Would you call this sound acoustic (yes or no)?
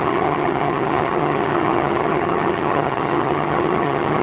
no